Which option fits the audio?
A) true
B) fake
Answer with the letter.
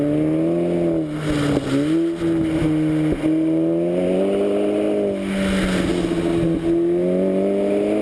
A